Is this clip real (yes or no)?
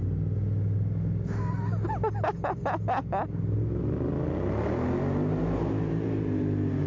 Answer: yes